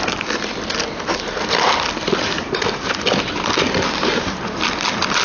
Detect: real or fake real